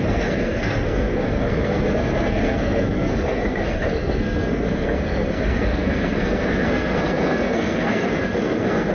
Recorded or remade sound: remade